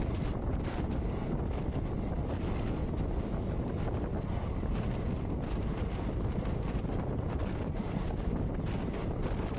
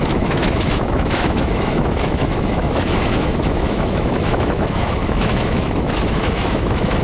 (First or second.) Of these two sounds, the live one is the first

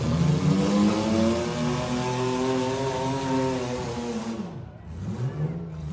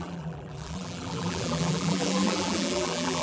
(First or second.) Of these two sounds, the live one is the first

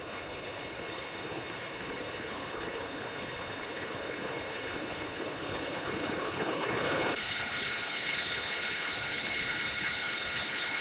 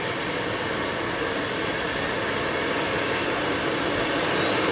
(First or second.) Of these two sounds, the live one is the second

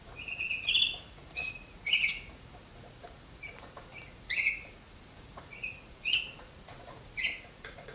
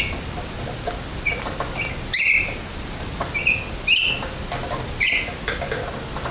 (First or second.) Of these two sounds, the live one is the second